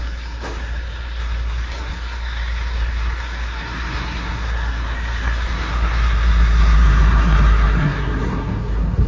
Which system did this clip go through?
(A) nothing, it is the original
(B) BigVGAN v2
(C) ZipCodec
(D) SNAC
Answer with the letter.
D